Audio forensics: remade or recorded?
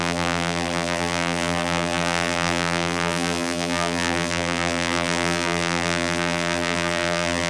remade